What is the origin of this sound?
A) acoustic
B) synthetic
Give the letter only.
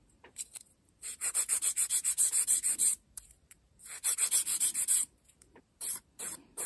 B